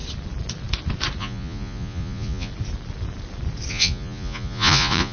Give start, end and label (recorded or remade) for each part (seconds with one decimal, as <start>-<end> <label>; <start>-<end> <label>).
0.0-1.2 recorded; 1.2-2.5 remade; 2.5-3.7 recorded; 3.7-5.1 remade